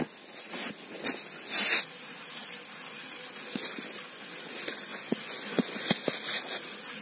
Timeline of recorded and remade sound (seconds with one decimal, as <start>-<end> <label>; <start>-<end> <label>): 0.0-4.9 recorded; 4.9-5.9 remade; 5.9-7.0 recorded